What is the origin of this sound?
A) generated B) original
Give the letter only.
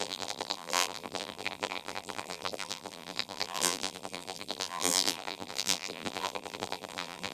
A